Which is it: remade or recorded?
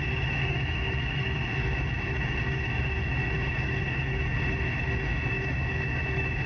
remade